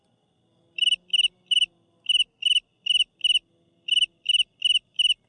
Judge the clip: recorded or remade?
recorded